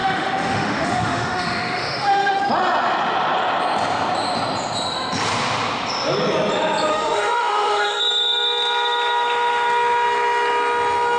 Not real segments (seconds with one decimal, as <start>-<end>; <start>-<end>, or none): 0.0-2.4; 6.9-8.0